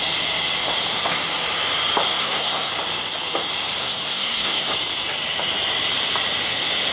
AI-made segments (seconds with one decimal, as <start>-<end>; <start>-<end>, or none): 2.2-2.7; 3.8-4.7

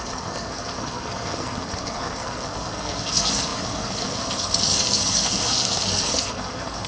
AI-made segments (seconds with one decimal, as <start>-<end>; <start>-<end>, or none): 0.0-6.9